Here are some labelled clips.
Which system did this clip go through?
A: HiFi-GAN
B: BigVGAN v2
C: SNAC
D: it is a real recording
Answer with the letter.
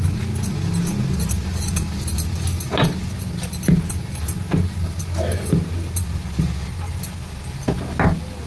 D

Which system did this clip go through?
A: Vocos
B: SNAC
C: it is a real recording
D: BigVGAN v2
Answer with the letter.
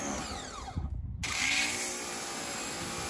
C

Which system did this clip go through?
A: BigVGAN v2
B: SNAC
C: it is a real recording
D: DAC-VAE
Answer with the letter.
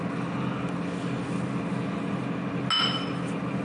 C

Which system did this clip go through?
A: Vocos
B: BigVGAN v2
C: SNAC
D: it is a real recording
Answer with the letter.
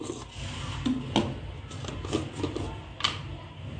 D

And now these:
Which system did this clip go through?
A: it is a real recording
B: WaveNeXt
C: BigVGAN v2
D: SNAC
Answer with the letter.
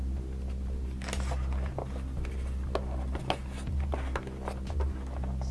A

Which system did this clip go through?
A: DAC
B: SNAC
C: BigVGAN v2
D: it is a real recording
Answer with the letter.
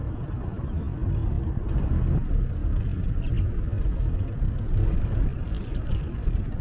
D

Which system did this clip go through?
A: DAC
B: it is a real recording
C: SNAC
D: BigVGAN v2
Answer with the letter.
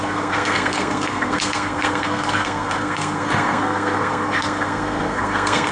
C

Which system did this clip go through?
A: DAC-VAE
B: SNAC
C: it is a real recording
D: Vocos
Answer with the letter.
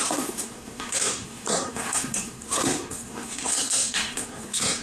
B